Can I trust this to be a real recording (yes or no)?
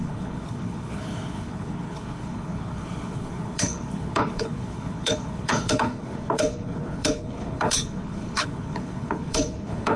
no